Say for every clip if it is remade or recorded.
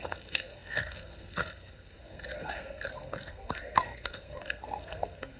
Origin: remade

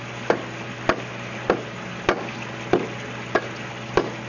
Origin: recorded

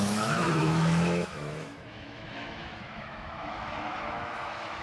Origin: remade